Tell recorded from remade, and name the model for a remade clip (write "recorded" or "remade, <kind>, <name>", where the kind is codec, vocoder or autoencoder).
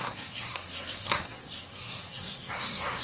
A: remade, codec, SNAC